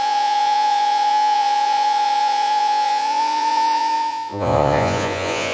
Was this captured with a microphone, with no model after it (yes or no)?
no